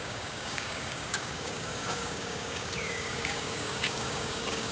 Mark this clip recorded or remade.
remade